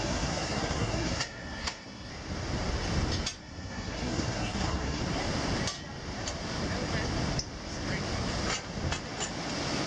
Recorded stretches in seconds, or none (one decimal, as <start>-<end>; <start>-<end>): 2.1-3.4; 5.0-9.9